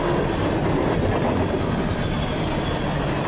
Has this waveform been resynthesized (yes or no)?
no